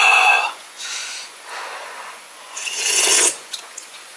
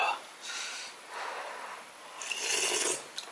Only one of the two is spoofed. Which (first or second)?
first